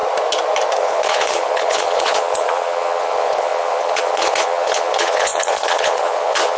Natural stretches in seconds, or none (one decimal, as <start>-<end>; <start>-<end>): 0.0-0.8